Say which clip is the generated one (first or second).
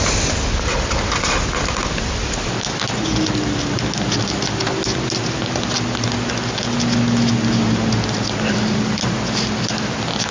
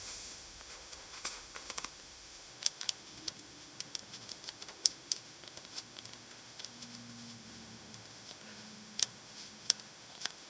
second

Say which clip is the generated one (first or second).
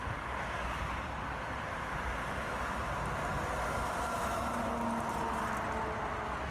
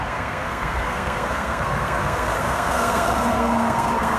second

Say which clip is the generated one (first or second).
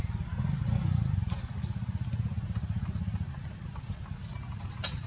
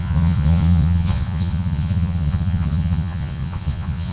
second